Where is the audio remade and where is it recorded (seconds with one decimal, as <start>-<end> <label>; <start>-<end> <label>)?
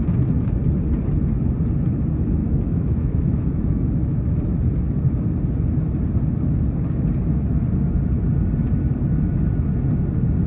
0.0-2.4 recorded; 2.4-4.4 remade; 4.4-10.5 recorded